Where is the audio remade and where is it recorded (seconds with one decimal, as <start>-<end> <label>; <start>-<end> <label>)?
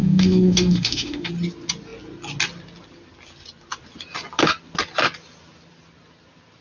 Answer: 0.0-1.3 remade; 1.3-6.6 recorded